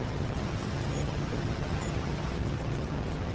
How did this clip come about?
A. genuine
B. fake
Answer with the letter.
B